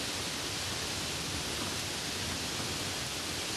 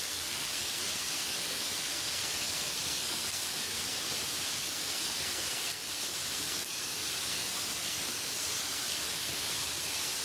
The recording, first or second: first